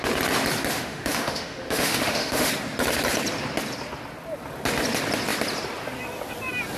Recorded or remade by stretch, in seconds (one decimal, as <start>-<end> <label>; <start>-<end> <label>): 0.0-0.7 recorded; 0.7-2.5 remade; 2.5-6.8 recorded